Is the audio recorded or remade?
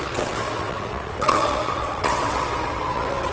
remade